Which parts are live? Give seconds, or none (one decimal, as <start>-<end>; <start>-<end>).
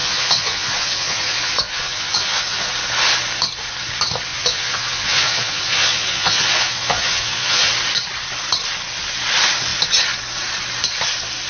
2.7-4.3; 7.7-11.5